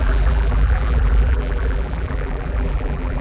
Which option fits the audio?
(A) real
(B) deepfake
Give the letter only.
B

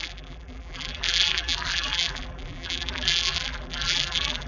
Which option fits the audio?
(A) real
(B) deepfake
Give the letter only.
B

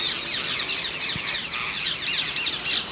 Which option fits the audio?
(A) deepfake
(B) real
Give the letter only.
B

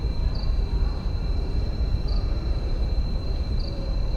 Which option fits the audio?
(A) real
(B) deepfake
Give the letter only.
B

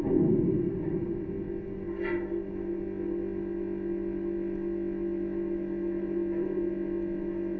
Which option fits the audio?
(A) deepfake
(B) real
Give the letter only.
B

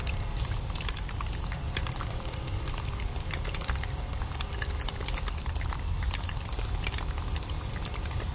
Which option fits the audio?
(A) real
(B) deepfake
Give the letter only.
B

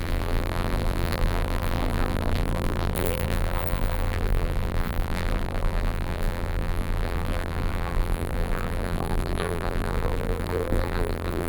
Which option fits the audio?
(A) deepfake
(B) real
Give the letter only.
A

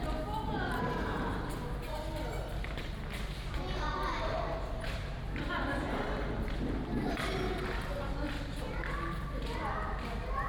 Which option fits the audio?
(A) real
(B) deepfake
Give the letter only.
A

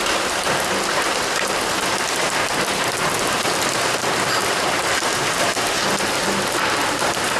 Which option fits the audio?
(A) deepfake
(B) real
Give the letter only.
B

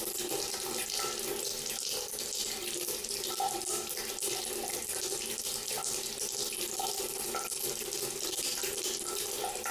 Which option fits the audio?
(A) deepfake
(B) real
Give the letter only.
B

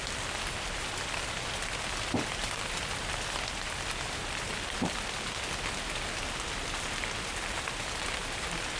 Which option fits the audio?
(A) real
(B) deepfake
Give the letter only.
A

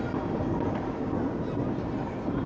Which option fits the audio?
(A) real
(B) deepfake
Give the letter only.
A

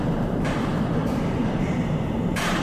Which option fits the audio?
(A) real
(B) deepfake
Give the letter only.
B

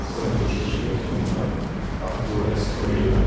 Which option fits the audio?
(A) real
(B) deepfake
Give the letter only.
A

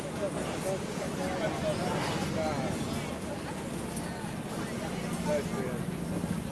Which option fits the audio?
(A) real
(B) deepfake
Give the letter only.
A